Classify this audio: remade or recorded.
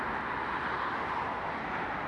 recorded